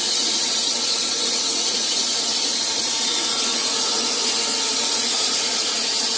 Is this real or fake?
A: fake